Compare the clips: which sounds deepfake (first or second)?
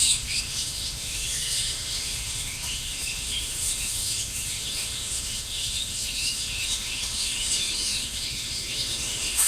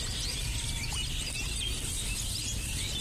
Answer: first